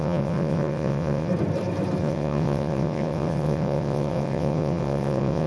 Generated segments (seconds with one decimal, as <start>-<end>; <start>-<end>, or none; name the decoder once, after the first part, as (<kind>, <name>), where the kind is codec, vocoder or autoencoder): 0.0-1.3 (vocoder, WaveNeXt); 2.0-5.5